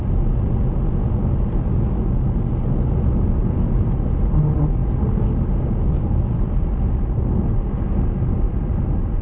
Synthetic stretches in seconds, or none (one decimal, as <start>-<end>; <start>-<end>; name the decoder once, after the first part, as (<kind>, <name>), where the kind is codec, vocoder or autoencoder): none